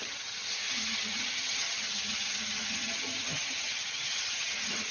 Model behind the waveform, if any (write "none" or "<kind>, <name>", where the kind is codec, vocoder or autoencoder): vocoder, HiFi-GAN